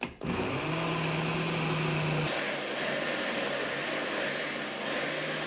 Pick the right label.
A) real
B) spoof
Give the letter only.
A